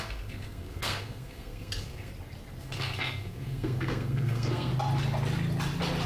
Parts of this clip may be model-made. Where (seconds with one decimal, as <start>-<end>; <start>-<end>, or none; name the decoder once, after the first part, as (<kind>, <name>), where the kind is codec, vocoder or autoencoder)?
0.0-2.1 (codec, SNAC); 2.6-4.7

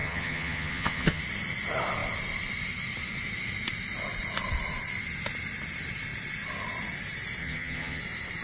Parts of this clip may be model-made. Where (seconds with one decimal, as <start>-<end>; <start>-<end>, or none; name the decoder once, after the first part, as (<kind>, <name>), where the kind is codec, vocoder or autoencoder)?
0.0-1.2 (vocoder, HiFi-GAN); 7.4-8.0

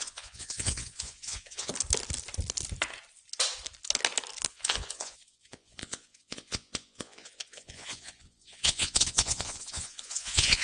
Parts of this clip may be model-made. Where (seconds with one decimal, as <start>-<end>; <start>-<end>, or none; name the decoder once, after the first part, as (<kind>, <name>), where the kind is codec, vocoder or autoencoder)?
0.0-1.7 (vocoder, Vocos); 4.5-10.6